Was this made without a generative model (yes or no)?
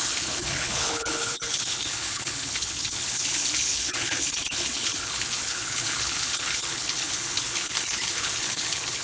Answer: no